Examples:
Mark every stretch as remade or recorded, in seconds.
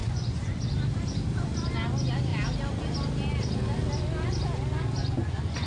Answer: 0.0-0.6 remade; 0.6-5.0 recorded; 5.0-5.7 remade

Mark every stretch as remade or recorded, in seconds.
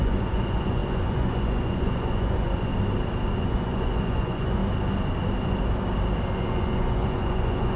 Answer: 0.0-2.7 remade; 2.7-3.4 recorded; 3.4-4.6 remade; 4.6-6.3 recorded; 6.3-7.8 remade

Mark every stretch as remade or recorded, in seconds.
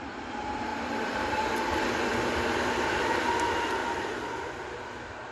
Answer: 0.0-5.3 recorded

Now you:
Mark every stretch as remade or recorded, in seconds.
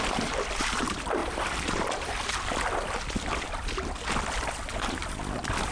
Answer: 0.0-5.7 recorded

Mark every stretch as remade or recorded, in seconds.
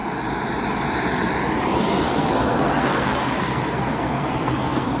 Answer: 0.0-1.7 recorded; 1.7-5.0 remade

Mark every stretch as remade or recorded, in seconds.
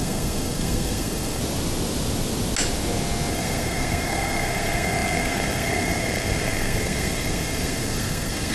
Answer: 0.0-1.4 remade; 1.4-3.3 recorded; 3.3-8.5 remade